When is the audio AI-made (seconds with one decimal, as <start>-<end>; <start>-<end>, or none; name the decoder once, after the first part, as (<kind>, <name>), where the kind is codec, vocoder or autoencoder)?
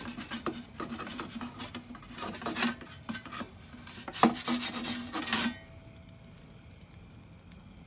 none